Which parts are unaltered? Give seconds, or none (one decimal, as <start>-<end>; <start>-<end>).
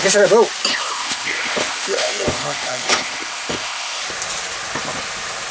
0.0-0.7; 4.0-5.5